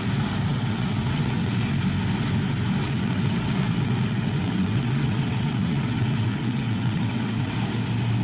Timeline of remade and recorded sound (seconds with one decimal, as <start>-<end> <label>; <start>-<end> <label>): 0.0-0.5 recorded; 0.5-1.5 remade; 1.5-2.8 recorded; 2.8-7.5 remade; 7.5-8.2 recorded